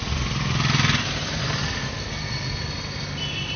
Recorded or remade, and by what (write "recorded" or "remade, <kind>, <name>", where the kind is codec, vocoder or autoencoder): recorded